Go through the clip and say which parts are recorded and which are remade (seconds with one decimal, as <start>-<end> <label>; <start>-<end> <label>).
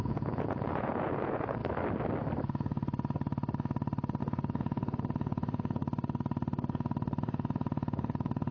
0.0-1.6 remade; 1.6-4.2 recorded; 4.2-5.8 remade; 5.8-7.2 recorded; 7.2-8.5 remade